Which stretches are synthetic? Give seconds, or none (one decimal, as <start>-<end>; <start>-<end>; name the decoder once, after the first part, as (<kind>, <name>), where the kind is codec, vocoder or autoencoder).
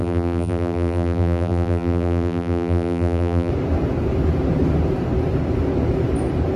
0.0-3.5 (vocoder, BigVGAN v2)